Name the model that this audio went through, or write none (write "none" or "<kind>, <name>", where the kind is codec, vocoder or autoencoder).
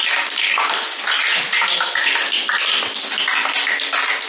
none